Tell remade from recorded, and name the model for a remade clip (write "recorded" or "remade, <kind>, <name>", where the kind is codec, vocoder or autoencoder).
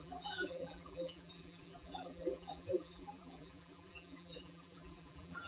remade, vocoder, BigVGAN v2